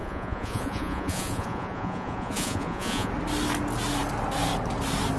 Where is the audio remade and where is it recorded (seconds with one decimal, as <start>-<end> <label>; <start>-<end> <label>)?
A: 0.0-3.1 remade; 3.1-5.2 recorded